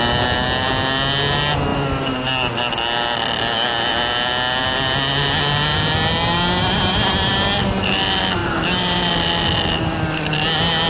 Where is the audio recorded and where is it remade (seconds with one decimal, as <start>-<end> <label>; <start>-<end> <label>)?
0.0-10.9 recorded